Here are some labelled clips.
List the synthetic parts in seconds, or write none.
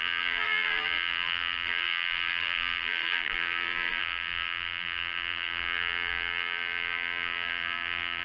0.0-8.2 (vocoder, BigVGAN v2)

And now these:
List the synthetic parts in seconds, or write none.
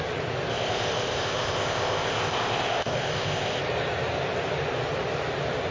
0.5-3.6 (codec, ZipCodec)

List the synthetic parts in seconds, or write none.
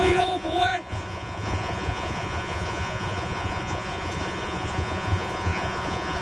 0.0-6.2 (vocoder, Vocos)